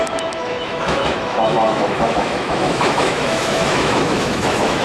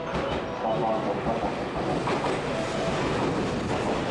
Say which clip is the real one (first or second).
second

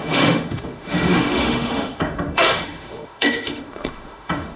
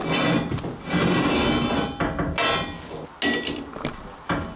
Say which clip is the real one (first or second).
second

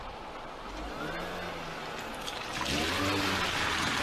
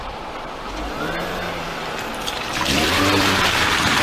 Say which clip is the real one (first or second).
first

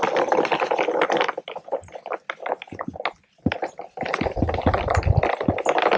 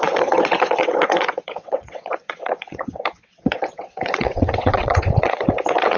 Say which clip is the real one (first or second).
first